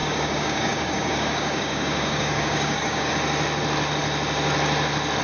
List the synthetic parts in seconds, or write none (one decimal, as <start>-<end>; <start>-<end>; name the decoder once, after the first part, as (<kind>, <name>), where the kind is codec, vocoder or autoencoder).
0.0-3.1 (codec, DAC)